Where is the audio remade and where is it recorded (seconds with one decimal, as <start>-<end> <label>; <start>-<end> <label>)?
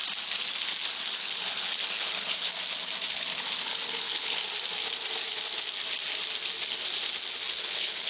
0.0-1.1 recorded; 1.1-2.5 remade; 2.5-3.1 recorded; 3.1-4.4 remade; 4.4-7.5 recorded; 7.5-8.1 remade